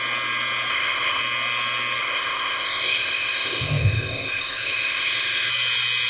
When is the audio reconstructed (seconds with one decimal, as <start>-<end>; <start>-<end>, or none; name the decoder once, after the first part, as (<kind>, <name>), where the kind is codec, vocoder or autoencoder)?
0.7-1.2 (codec, ZipCodec); 2.0-5.5